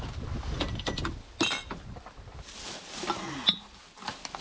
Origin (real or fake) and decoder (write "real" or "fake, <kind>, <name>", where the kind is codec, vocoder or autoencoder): real